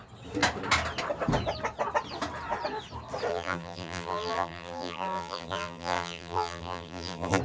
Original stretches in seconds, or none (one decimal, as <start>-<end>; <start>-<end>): 0.0-3.3